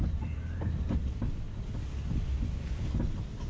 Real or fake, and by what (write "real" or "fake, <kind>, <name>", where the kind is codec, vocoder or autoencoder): real